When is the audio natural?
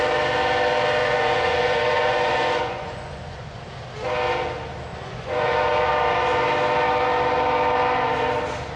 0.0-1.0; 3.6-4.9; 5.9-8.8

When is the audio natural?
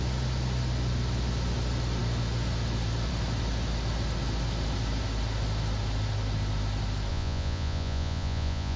0.0-7.1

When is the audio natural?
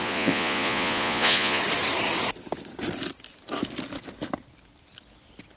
1.6-5.6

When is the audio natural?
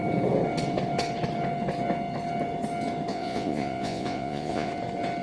0.0-3.1; 4.7-5.2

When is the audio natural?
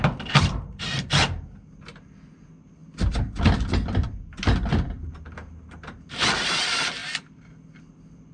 0.0-8.3